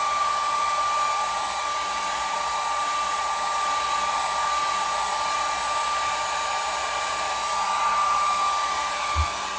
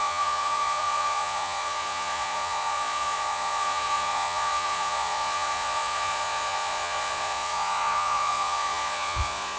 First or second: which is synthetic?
second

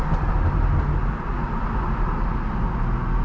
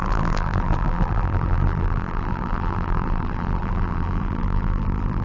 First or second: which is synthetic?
second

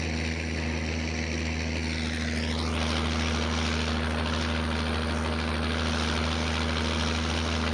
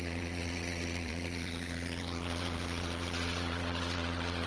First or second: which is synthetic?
second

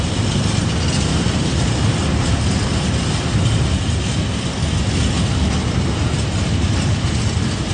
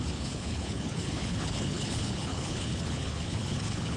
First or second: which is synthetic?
second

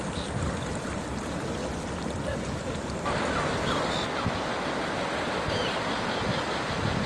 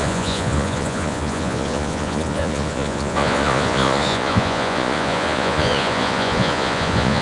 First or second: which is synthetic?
second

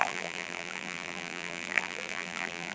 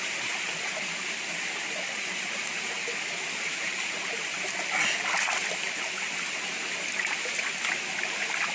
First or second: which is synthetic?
first